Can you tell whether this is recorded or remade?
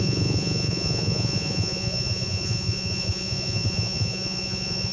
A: remade